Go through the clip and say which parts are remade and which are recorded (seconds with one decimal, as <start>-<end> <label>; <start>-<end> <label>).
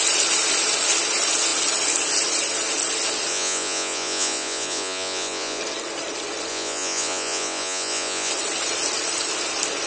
0.0-3.3 recorded; 3.3-5.6 remade; 5.6-6.5 recorded; 6.5-8.3 remade; 8.3-9.9 recorded